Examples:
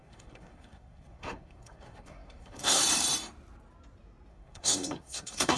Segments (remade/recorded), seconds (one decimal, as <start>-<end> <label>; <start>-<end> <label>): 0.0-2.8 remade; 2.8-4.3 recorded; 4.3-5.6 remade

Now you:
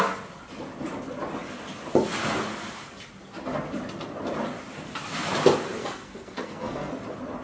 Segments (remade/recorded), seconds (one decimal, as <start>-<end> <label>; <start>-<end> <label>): 0.0-5.8 recorded; 5.8-6.9 remade; 6.9-7.4 recorded

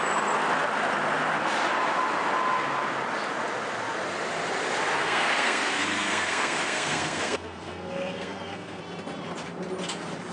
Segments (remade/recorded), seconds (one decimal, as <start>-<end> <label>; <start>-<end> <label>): 0.0-5.0 recorded; 5.0-8.8 remade; 8.8-10.3 recorded

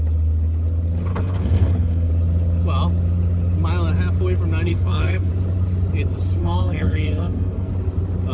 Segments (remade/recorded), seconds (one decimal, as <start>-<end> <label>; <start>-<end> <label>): 0.0-1.1 recorded; 1.1-2.1 remade; 2.1-4.7 recorded; 4.7-5.3 remade; 5.3-6.4 recorded; 6.4-7.7 remade; 7.7-8.3 recorded